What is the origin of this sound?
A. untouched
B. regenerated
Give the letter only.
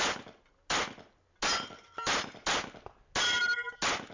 A